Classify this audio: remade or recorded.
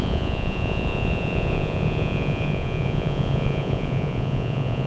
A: remade